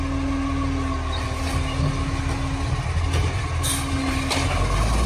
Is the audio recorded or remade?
recorded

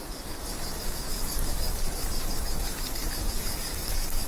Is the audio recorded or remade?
remade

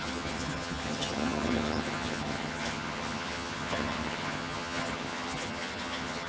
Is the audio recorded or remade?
remade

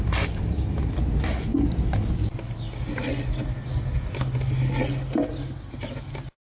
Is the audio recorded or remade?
recorded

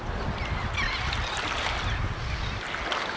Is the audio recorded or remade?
recorded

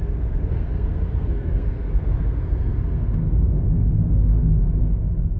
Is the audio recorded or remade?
remade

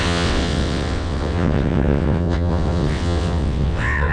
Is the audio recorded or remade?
remade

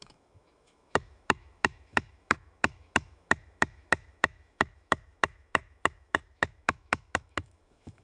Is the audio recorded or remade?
remade